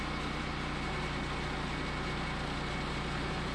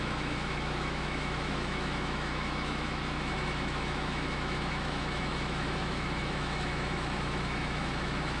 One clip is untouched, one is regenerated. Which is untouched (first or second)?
first